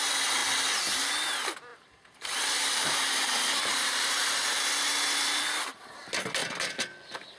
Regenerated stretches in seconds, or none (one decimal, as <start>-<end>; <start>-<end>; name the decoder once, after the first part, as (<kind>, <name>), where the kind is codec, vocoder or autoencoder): 1.7-4.6 (vocoder, BigVGAN v2)